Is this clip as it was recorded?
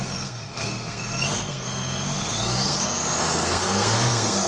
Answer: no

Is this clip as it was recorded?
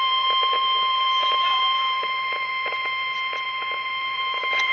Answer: no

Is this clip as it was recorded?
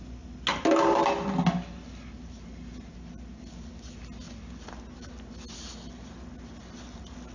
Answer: yes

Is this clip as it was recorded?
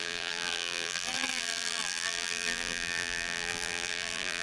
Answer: no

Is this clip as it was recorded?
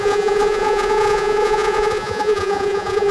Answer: no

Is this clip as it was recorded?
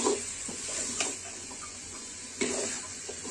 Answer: no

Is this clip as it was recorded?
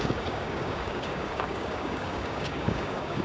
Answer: no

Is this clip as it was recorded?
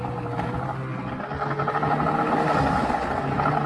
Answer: yes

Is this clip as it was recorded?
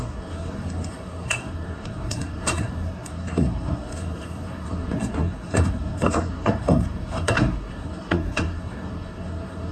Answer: no